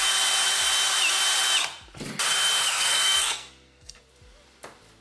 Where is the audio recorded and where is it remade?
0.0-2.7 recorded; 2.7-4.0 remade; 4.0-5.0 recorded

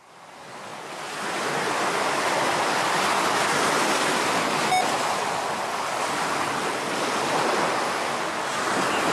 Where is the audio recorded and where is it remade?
0.0-9.1 recorded

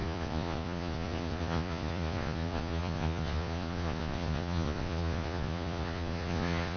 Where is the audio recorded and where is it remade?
0.0-6.8 remade